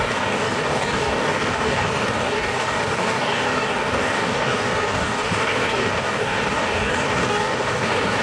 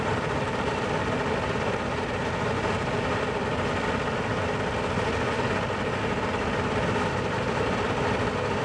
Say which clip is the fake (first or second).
first